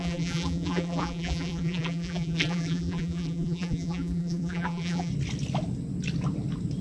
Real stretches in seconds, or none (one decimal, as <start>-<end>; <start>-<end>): 5.1-6.8